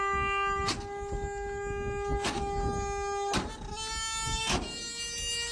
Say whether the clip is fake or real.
real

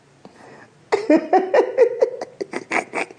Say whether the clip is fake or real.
real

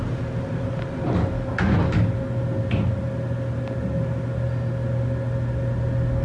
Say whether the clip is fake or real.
real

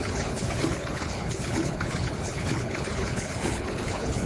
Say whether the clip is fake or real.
fake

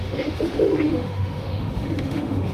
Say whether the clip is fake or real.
fake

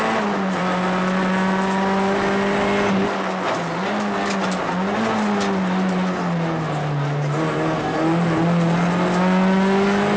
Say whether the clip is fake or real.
real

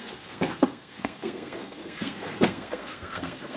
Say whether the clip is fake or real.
fake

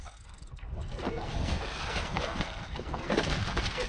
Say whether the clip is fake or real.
fake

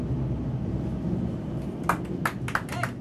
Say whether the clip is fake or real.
real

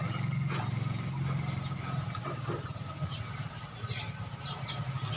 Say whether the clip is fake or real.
real